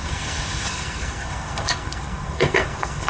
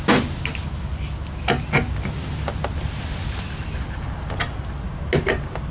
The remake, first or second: first